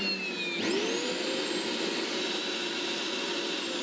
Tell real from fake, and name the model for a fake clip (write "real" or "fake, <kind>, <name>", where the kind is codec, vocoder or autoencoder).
real